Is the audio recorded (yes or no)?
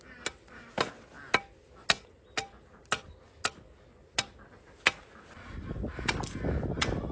yes